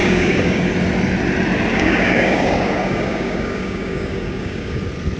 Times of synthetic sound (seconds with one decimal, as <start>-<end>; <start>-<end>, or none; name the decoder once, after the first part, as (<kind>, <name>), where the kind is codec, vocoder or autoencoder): 0.0-0.7 (codec, DAC); 1.7-4.8